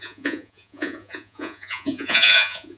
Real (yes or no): no